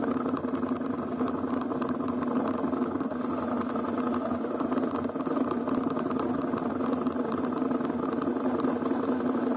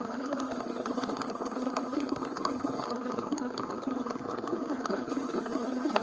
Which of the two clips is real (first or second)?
first